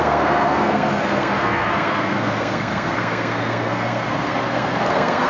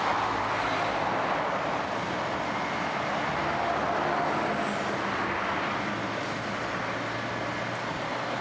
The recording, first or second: second